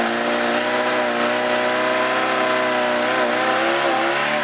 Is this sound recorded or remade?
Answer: recorded